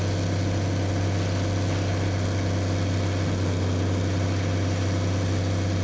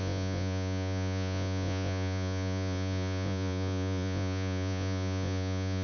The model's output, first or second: second